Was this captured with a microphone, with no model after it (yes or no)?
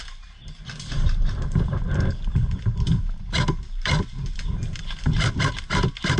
yes